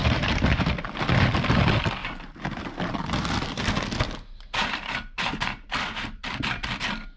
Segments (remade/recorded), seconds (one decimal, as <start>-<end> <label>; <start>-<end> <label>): 0.0-0.8 remade; 0.8-2.0 recorded; 2.0-3.6 remade; 3.6-4.6 recorded; 4.6-6.8 remade; 6.8-7.2 recorded